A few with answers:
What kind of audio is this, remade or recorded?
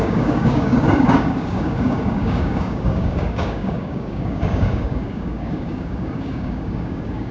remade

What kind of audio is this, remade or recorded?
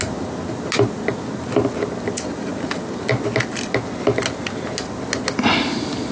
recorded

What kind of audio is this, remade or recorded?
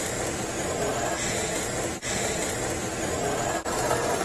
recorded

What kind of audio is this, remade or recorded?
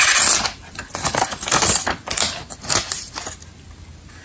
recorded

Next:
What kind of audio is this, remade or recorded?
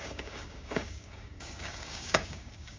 remade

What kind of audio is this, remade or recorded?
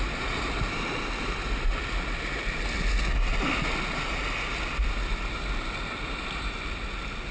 recorded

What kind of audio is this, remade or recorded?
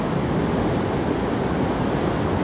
recorded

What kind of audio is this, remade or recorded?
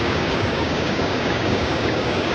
remade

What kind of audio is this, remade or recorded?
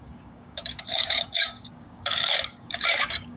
remade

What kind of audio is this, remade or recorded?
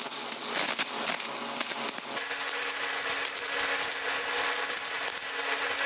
recorded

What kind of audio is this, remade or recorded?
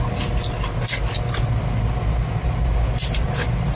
recorded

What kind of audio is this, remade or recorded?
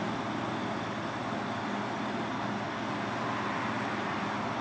recorded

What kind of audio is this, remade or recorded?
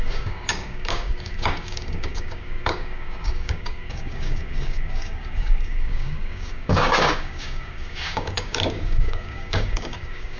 remade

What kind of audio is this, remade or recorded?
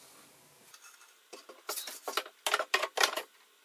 recorded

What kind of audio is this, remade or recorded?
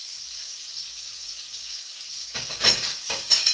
remade